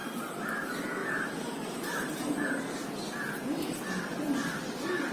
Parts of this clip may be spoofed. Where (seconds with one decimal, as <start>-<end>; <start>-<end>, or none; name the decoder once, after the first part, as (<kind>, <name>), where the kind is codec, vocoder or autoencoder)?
0.0-0.6 (vocoder, BigVGAN v2); 1.0-2.5